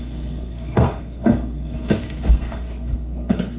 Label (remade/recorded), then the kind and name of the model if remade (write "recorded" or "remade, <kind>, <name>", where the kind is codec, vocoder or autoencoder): remade, codec, SNAC